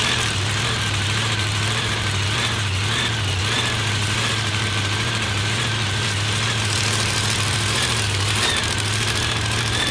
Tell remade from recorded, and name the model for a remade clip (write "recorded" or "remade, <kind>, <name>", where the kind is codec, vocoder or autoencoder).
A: remade, vocoder, BigVGAN v2